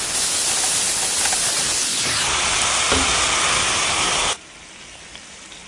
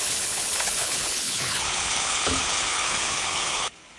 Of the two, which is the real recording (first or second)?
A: first